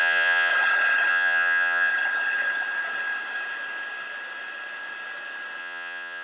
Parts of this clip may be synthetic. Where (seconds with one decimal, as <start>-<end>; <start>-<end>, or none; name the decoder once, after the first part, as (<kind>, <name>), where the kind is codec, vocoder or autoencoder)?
0.0-0.5 (vocoder, Vocos); 1.1-1.9; 5.6-6.2